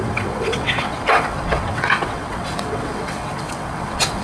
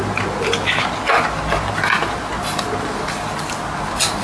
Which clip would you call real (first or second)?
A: second